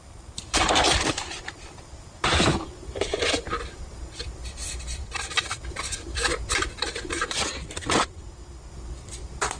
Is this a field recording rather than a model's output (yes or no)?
no